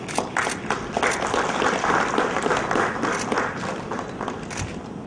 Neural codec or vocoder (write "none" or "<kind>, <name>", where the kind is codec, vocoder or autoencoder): none